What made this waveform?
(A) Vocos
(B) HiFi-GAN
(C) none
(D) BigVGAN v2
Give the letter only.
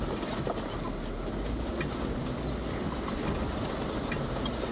C